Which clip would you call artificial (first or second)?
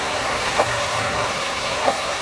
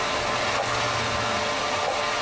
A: first